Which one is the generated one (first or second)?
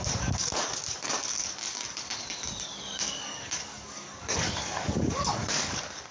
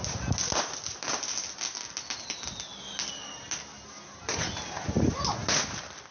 first